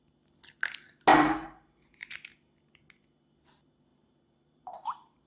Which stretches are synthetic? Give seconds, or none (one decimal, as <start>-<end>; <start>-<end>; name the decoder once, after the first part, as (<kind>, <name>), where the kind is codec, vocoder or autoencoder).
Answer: 1.1-2.0 (vocoder, BigVGAN v2); 3.9-5.3